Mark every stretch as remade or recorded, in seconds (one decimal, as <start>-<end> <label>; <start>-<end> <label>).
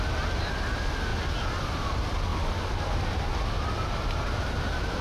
0.0-5.0 recorded